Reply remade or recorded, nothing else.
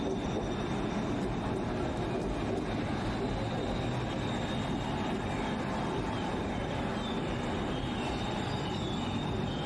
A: recorded